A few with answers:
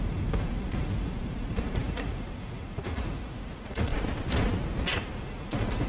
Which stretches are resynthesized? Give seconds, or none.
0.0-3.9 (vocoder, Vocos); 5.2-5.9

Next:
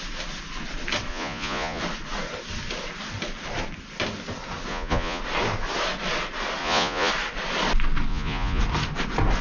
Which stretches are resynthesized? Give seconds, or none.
1.1-1.8 (vocoder, Vocos); 4.7-5.2; 6.6-7.1; 8.1-8.6

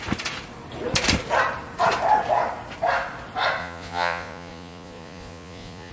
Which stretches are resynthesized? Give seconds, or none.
3.6-5.9 (vocoder, Vocos)

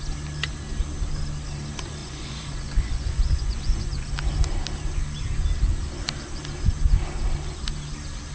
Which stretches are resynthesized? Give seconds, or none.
2.0-4.1 (vocoder, Vocos)

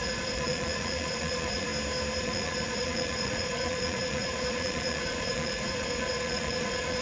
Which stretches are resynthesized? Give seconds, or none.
0.0-1.7 (vocoder, Vocos); 2.2-7.0

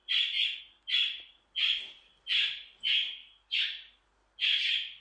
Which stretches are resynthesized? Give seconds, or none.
none

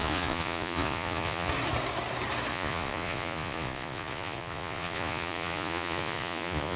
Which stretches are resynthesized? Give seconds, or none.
0.0-1.5 (vocoder, Vocos); 2.5-6.8

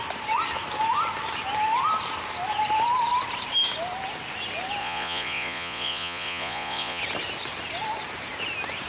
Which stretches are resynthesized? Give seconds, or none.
4.8-7.0 (vocoder, Vocos)